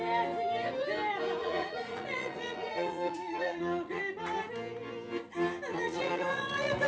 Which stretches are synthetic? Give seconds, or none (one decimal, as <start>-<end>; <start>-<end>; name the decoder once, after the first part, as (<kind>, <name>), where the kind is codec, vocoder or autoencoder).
1.4-4.0 (vocoder, Vocos); 5.7-6.9